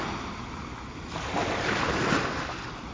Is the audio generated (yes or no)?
no